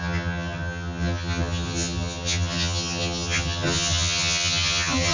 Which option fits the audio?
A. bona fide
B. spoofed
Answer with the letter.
B